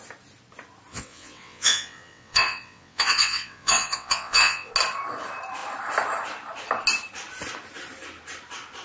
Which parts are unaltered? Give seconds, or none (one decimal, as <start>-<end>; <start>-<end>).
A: 0.0-0.9; 4.7-8.8